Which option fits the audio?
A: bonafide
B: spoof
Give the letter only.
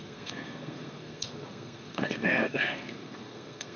B